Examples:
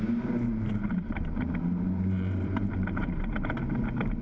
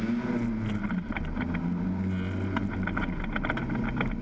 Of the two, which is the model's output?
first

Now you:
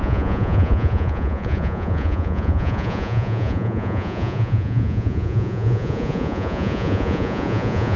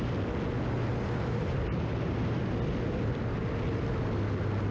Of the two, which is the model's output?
first